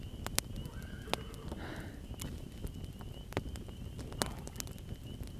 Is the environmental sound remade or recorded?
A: recorded